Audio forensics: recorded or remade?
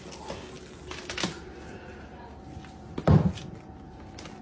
recorded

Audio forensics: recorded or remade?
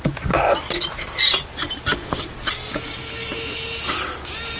recorded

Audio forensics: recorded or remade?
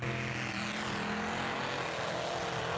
recorded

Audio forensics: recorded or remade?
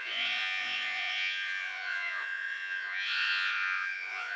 remade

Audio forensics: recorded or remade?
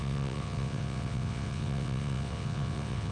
remade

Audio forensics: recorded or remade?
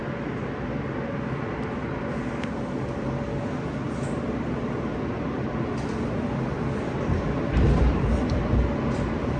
recorded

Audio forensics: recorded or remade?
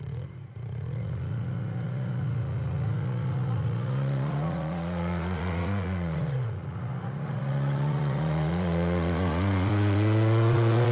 remade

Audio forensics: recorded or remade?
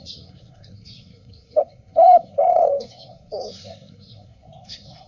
remade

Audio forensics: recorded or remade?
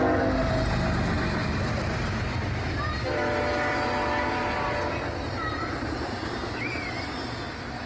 recorded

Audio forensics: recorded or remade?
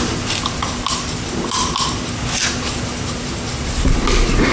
recorded